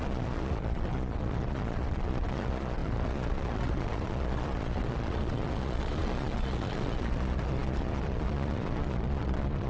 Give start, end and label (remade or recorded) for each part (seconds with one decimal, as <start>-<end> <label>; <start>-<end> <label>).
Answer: 0.0-9.7 remade